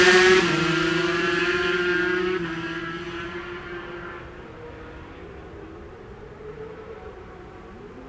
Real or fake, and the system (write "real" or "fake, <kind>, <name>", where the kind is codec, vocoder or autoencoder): fake, vocoder, BigVGAN v2